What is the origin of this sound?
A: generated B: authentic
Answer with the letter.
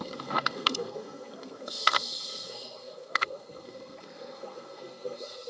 A